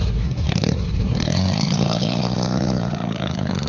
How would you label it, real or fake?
fake